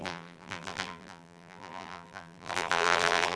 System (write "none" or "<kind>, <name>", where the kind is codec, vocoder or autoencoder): vocoder, BigVGAN v2